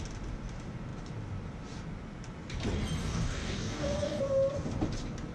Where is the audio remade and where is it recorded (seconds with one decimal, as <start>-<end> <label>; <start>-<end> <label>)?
0.0-3.0 recorded; 3.0-4.2 remade; 4.2-5.3 recorded